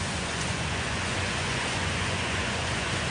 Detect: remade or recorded remade